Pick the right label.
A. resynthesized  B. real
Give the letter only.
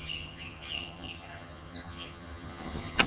A